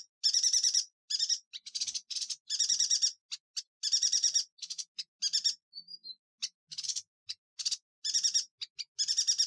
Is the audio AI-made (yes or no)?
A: no